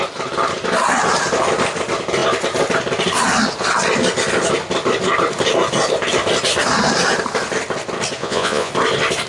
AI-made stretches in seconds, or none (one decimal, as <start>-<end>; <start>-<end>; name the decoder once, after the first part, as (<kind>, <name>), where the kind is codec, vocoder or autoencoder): 8.2-8.7 (vocoder, Vocos)